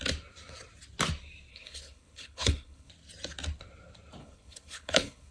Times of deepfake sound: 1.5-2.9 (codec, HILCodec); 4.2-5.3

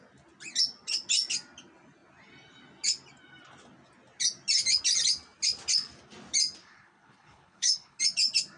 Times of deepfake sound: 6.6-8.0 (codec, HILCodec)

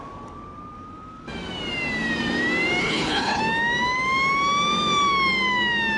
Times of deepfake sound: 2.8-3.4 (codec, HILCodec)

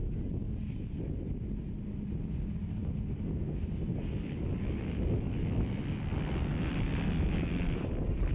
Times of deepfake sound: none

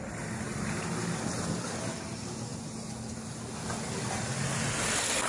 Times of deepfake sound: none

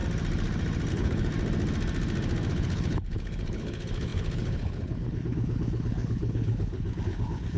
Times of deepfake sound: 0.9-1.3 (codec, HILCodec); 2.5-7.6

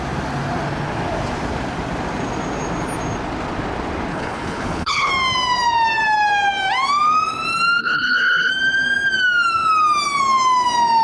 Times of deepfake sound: 4.1-5.1 (codec, HILCodec); 7.8-8.5